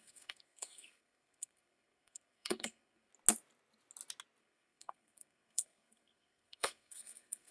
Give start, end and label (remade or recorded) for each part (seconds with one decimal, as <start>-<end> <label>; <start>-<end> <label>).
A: 0.0-3.1 remade; 3.1-4.4 recorded; 4.4-7.5 remade